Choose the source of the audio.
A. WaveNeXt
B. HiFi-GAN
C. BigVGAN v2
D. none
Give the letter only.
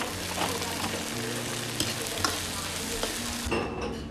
D